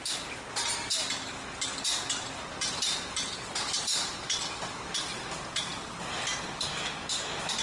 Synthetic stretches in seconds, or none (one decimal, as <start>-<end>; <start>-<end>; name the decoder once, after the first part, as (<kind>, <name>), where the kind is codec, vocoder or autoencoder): none